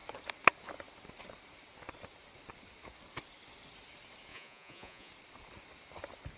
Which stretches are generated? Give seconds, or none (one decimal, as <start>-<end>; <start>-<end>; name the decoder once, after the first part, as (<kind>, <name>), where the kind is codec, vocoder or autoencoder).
4.3-5.1 (vocoder, Vocos)